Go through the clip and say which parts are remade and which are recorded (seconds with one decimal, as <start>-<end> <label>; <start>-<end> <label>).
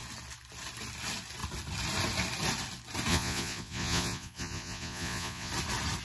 0.0-3.1 recorded; 3.1-5.5 remade; 5.5-6.0 recorded